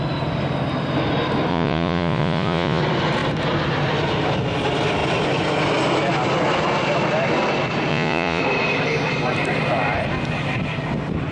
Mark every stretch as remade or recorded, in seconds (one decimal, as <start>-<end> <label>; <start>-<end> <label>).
0.0-1.5 recorded; 1.5-2.8 remade; 2.8-7.9 recorded; 7.9-8.4 remade; 8.4-11.3 recorded